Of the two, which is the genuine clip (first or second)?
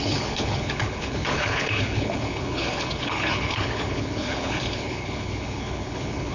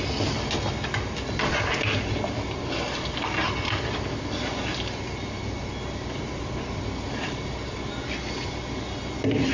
second